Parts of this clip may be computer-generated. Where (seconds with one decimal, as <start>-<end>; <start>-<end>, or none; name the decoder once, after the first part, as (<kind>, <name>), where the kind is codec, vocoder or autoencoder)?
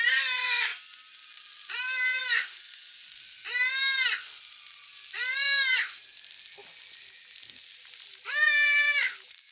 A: none